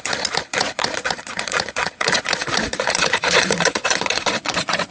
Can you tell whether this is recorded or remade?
remade